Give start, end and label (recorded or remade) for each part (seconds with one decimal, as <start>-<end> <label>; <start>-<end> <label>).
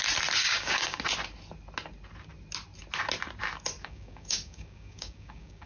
0.0-0.4 recorded; 0.4-1.0 remade; 1.0-3.8 recorded; 3.8-5.7 remade